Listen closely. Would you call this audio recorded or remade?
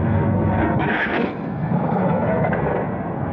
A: remade